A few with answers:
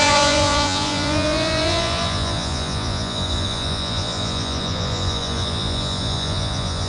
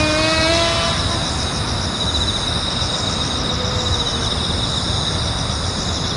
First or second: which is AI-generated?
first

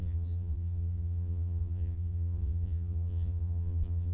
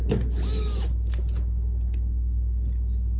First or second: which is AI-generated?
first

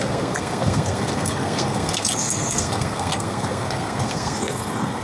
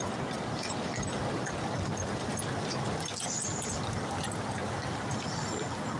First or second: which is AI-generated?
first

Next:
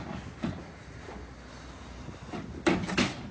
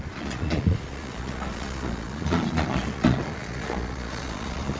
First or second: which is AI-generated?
second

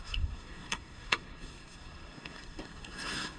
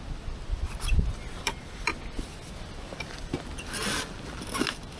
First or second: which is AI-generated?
first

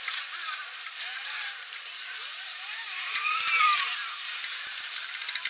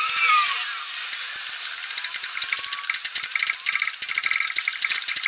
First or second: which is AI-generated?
first